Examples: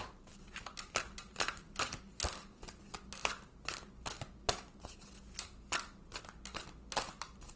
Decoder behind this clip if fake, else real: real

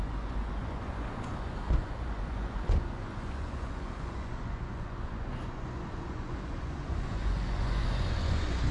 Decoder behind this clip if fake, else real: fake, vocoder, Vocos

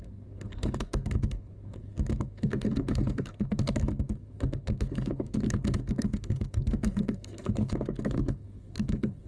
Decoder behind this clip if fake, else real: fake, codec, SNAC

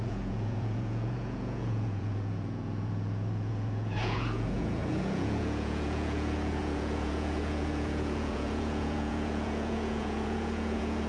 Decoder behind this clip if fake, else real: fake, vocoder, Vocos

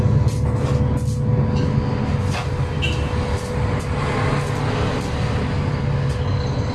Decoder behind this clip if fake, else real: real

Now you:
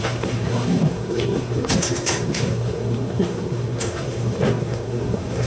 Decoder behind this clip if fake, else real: fake, codec, SNAC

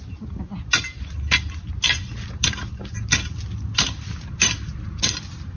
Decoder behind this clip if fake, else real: real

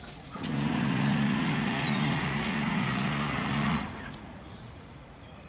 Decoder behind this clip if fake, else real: fake, vocoder, Vocos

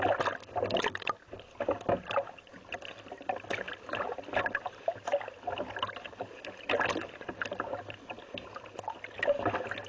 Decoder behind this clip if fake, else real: real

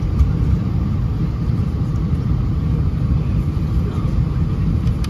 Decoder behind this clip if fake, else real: fake, vocoder, BigVGAN v2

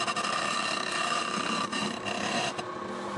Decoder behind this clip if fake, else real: real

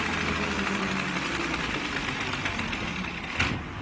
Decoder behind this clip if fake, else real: real